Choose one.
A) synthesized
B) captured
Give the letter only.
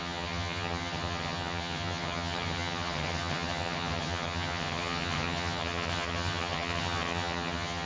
A